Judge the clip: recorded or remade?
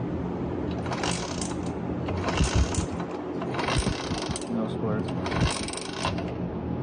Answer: recorded